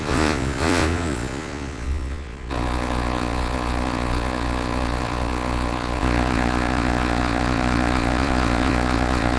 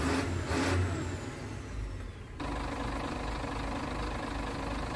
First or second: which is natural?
second